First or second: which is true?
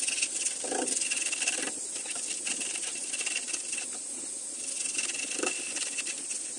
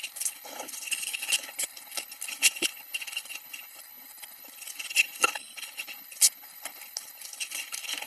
first